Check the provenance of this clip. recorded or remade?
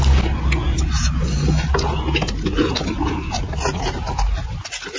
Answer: recorded